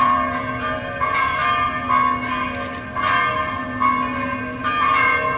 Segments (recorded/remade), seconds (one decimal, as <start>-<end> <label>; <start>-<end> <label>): 0.0-1.4 remade; 1.4-4.6 recorded; 4.6-5.4 remade